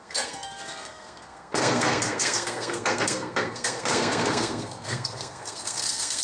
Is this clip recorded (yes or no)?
no